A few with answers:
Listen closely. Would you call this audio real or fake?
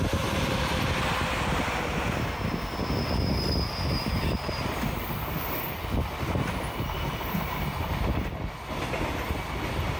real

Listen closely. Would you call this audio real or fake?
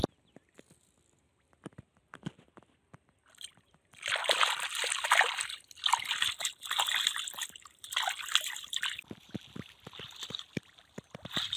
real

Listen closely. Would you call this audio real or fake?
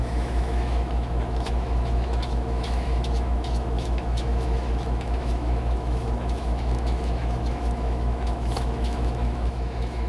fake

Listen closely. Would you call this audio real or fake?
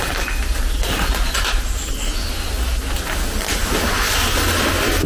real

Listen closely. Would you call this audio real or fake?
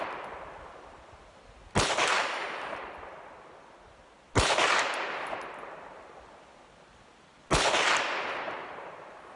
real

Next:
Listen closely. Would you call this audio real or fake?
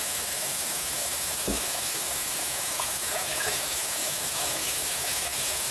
fake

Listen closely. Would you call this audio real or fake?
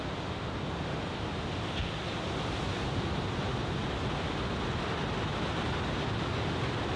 real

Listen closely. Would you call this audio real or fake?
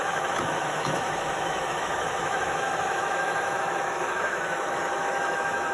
fake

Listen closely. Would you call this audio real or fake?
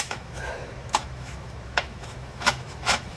fake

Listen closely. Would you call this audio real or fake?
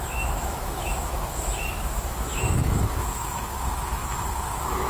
fake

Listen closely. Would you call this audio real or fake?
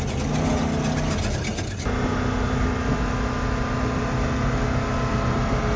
real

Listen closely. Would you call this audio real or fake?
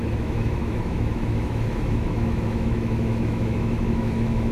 fake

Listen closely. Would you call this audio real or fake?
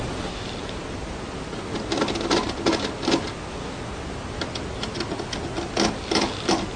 real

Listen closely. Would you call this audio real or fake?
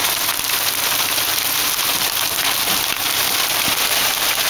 real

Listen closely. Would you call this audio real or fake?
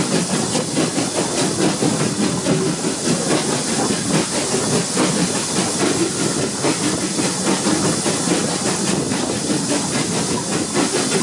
real